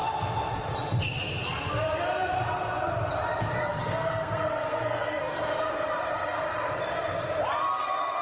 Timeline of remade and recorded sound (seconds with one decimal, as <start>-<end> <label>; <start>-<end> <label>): 0.0-3.6 recorded; 3.6-5.7 remade; 5.7-8.2 recorded

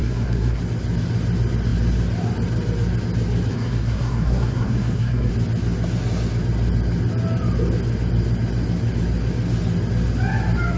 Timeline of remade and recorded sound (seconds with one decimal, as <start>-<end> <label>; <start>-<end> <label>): 0.0-0.6 remade; 0.6-3.5 recorded; 3.5-5.3 remade; 5.3-10.8 recorded

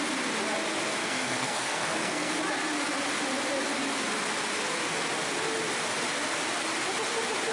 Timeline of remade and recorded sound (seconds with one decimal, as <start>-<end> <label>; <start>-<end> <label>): 0.0-1.0 recorded; 1.0-2.3 remade; 2.3-7.5 recorded

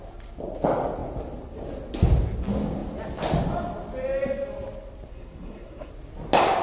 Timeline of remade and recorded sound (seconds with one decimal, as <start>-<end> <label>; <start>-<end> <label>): 0.0-5.1 recorded; 5.1-5.9 remade; 5.9-6.6 recorded